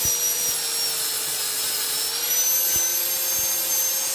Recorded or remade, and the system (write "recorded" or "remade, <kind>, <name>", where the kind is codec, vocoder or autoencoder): recorded